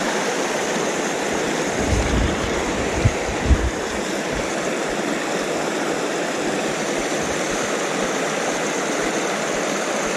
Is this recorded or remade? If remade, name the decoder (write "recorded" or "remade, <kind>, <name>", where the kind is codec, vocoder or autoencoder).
recorded